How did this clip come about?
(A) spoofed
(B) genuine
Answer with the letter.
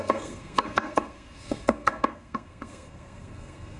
A